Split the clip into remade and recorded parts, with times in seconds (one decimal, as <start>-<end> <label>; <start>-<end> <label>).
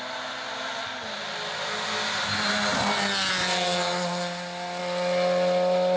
0.0-6.0 recorded